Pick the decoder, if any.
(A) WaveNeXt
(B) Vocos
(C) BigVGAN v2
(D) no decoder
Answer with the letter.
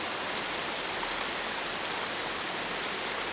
D